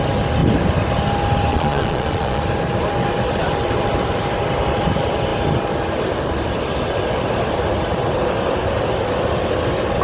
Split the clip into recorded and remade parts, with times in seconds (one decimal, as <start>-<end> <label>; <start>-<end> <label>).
0.0-1.5 recorded; 1.5-2.4 remade; 2.4-10.0 recorded